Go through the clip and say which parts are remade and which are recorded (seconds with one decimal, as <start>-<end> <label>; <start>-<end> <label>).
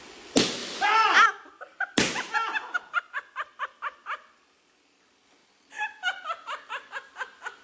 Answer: 0.0-7.6 recorded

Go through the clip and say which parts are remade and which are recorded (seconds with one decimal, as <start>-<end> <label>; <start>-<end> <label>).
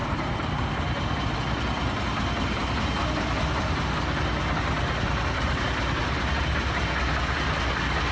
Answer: 0.0-0.6 remade; 0.6-8.1 recorded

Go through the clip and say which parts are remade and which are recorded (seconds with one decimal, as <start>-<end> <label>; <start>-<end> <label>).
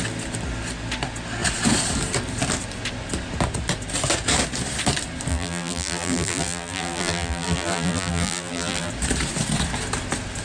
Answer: 0.0-5.3 recorded; 5.3-8.9 remade; 8.9-10.4 recorded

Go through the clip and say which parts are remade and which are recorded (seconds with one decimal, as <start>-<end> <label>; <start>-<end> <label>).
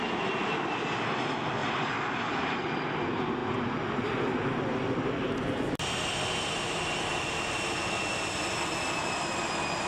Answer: 0.0-1.6 recorded; 1.6-2.6 remade; 2.6-9.9 recorded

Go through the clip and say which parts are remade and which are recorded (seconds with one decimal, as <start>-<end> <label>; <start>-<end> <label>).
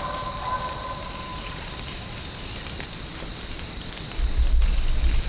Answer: 0.0-1.3 recorded; 1.3-4.5 remade; 4.5-5.3 recorded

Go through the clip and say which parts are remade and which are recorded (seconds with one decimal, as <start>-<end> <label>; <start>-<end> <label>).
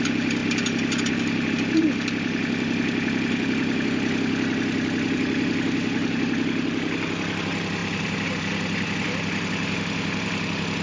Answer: 0.0-10.8 remade